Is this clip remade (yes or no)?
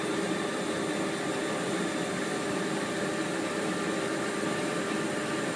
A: no